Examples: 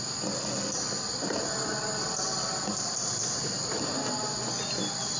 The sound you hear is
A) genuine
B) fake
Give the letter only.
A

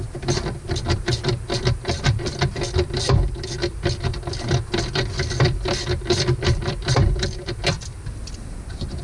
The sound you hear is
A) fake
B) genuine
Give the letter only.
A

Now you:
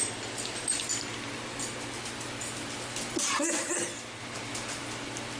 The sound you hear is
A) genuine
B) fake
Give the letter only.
A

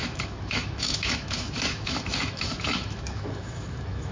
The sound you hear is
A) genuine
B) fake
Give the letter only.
B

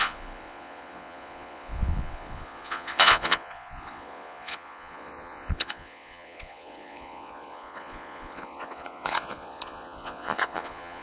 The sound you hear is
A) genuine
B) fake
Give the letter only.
B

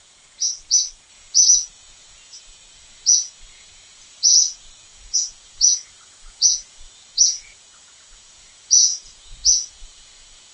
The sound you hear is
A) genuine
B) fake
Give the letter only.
B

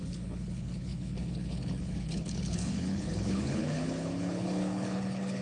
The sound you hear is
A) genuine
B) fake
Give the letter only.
B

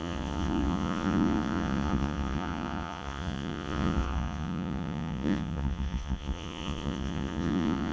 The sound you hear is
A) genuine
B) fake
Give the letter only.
B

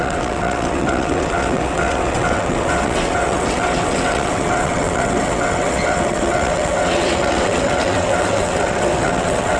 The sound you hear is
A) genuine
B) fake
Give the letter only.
B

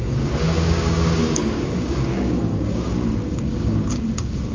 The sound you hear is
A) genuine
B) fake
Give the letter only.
B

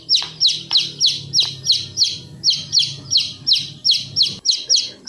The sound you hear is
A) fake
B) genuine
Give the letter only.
B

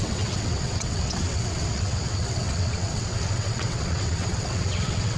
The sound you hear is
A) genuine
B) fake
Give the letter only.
B